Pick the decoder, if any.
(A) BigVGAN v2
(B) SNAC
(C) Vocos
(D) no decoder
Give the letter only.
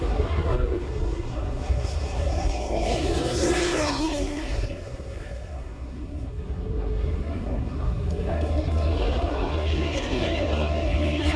B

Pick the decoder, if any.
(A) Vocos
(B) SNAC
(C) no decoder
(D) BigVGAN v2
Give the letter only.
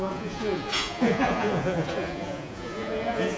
A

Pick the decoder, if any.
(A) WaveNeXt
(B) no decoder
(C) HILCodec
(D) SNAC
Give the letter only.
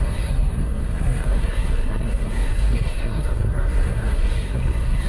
D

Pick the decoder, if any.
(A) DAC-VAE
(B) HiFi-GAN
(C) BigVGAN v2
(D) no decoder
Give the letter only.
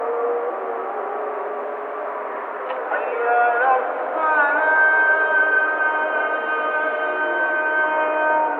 D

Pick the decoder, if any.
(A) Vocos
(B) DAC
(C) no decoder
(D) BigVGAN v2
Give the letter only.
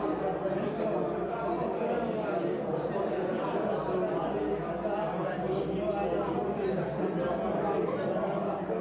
C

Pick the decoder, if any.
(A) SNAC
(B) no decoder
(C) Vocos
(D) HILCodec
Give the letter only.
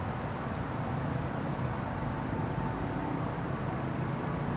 B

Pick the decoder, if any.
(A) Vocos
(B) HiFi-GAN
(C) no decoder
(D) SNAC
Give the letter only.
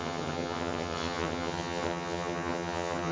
B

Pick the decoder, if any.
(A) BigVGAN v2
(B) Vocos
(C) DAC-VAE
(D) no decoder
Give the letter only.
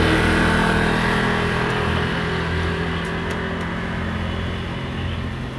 D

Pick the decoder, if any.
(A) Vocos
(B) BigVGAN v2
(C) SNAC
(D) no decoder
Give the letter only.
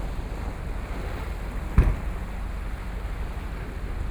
D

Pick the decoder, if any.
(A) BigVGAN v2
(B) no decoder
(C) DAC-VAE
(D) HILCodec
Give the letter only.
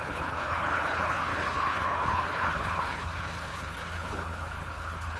D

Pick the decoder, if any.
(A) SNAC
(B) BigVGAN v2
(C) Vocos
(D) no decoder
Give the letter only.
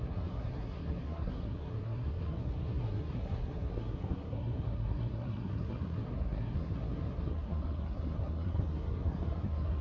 A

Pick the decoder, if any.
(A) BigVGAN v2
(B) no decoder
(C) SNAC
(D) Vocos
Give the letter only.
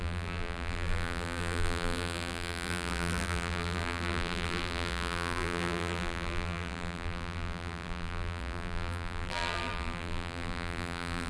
A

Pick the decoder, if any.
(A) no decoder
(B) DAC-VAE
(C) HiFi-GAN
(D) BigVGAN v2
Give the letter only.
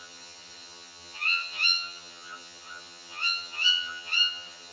C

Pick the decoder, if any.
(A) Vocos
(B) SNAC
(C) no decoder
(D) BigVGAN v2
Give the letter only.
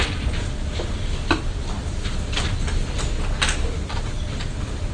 C